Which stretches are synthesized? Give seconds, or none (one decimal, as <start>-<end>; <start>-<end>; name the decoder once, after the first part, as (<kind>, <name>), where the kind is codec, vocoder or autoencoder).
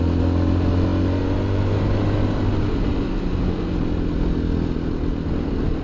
none